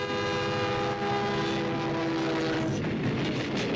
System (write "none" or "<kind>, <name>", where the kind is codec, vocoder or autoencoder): none